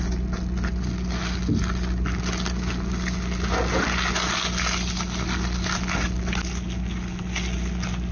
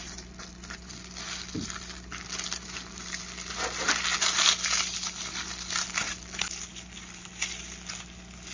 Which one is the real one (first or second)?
first